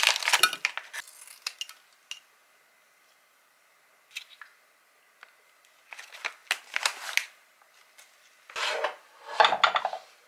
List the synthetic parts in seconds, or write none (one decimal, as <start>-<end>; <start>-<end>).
none

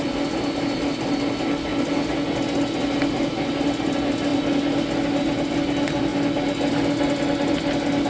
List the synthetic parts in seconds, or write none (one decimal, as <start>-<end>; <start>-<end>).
none

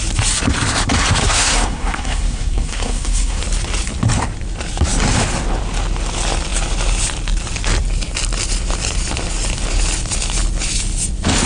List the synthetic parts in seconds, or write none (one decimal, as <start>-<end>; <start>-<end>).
1.2-3.4

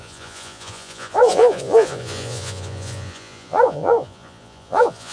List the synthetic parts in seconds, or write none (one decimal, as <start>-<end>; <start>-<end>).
0.0-5.1

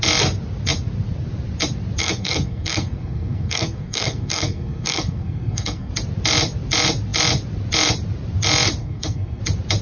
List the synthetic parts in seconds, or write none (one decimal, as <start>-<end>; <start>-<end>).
2.0-5.9; 8.8-9.4

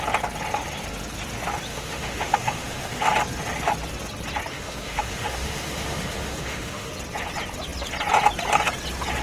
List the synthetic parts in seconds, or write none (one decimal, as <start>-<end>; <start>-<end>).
1.7-3.0; 4.5-6.9

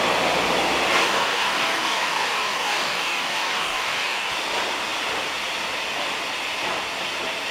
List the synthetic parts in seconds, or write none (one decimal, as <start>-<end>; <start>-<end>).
1.0-4.3